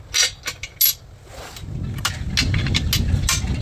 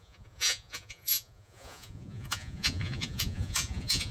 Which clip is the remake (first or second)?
second